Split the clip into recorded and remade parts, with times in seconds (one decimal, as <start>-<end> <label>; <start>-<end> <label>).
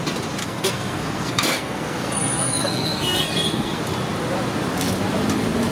0.0-0.4 recorded; 0.4-3.8 remade; 3.8-5.7 recorded